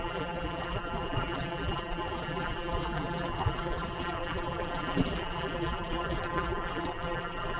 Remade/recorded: remade